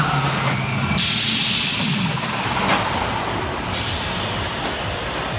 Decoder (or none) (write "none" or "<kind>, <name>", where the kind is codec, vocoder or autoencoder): none